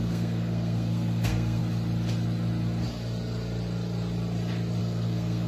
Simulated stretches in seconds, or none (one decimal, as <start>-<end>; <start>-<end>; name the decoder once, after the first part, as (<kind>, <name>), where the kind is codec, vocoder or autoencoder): 0.0-1.6 (codec, SNAC); 4.8-5.5